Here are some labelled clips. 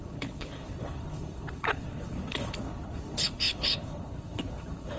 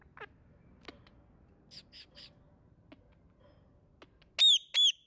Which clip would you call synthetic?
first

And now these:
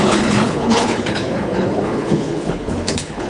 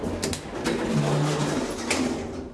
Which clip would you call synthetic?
first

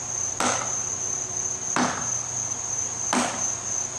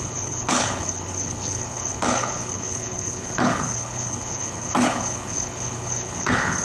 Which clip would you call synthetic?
second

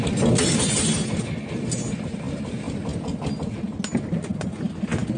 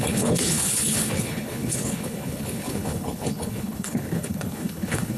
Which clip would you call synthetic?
second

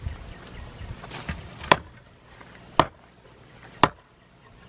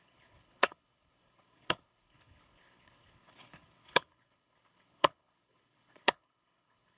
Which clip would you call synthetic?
second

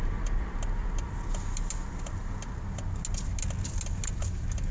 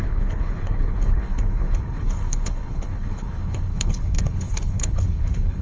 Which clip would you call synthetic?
second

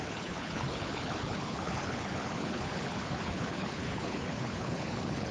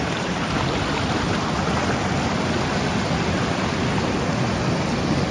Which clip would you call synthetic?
first